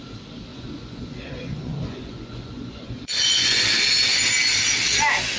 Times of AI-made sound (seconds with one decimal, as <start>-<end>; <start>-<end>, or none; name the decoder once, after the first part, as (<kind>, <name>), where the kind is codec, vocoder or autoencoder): 0.5-3.6 (vocoder, Vocos)